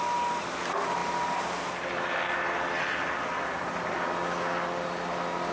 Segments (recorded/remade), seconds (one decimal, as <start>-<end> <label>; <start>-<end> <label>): 0.0-5.5 recorded